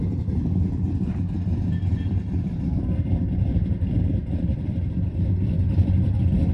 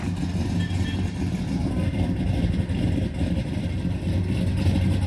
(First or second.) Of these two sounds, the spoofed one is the first